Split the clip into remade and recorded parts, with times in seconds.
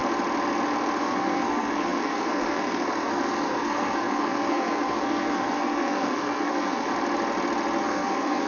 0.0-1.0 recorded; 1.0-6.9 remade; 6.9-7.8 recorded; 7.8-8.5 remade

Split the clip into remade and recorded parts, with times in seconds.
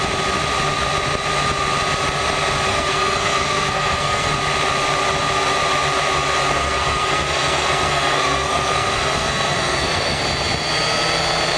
0.0-2.7 recorded; 2.7-4.3 remade; 4.3-6.5 recorded; 6.5-10.2 remade; 10.2-11.6 recorded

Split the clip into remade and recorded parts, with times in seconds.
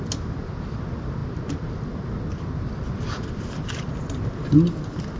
0.0-5.2 recorded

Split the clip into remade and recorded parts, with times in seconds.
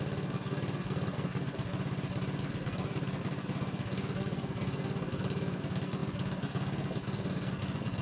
0.0-1.7 remade; 1.7-2.4 recorded; 2.4-8.0 remade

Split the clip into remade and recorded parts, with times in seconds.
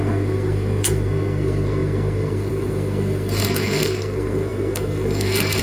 0.0-5.6 remade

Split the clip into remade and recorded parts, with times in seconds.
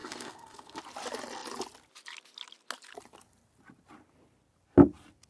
0.0-0.8 remade; 0.8-5.3 recorded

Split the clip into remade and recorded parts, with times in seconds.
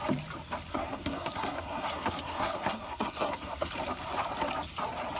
0.0-0.7 recorded; 0.7-3.7 remade; 3.7-5.2 recorded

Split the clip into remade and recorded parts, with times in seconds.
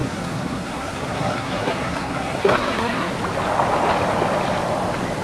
0.0-3.1 remade; 3.1-5.2 recorded